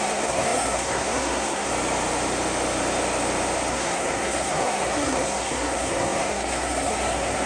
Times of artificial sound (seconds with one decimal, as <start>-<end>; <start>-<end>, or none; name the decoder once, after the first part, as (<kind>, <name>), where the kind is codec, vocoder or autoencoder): 0.0-1.7 (codec, SNAC); 3.7-7.5